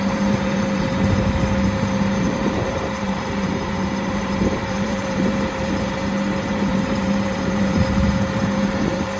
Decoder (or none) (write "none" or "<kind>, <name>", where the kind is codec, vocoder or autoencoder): vocoder, BigVGAN v2